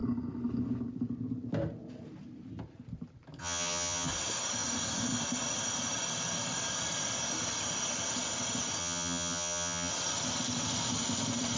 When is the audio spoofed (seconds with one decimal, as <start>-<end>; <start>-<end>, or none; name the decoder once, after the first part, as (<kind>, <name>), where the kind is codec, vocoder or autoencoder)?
3.4-4.1 (vocoder, HiFi-GAN); 8.8-9.9